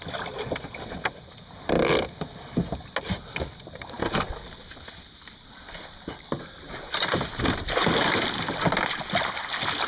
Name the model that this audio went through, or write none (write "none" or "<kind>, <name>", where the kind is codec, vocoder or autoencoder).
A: none